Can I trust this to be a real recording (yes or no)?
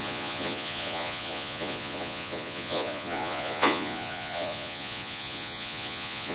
no